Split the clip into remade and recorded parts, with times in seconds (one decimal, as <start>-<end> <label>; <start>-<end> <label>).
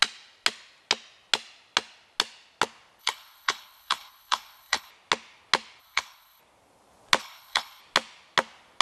0.0-3.0 recorded; 3.0-4.9 remade; 4.9-5.8 recorded; 5.8-6.4 remade; 6.4-7.2 recorded; 7.2-7.8 remade; 7.8-8.8 recorded